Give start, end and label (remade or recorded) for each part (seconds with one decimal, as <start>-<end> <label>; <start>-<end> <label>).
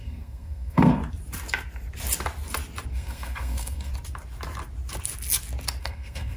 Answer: 0.0-1.0 remade; 1.0-2.9 recorded; 2.9-3.9 remade; 3.9-5.8 recorded; 5.8-6.4 remade